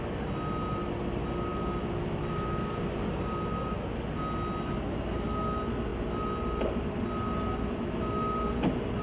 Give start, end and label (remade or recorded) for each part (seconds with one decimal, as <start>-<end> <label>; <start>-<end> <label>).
0.0-9.0 recorded

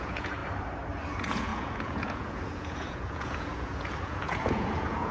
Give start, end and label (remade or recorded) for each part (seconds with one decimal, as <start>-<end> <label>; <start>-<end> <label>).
0.0-0.4 remade; 0.4-1.1 recorded; 1.1-5.1 remade

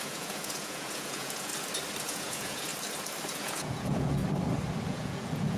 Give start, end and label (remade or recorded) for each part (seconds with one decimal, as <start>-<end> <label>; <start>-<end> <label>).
0.0-1.5 remade; 1.5-2.0 recorded; 2.0-2.7 remade; 2.7-3.3 recorded; 3.3-4.2 remade; 4.2-4.8 recorded; 4.8-5.6 remade

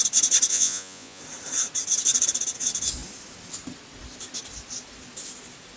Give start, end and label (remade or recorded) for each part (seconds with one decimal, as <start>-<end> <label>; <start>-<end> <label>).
0.0-0.5 recorded; 0.5-1.2 remade; 1.2-5.8 recorded

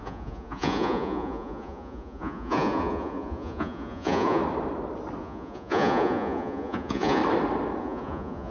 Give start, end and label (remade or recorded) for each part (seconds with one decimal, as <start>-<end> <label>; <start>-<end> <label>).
0.0-4.4 remade; 4.4-5.2 recorded; 5.2-7.2 remade; 7.2-7.8 recorded; 7.8-8.5 remade

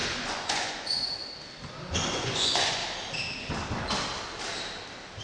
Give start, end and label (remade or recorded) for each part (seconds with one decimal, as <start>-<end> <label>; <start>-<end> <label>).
0.0-1.2 remade; 1.2-2.1 recorded; 2.1-2.8 remade; 2.8-5.2 recorded

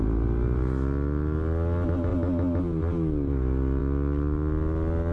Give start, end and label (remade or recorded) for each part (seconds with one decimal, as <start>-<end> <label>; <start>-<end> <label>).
0.0-5.1 recorded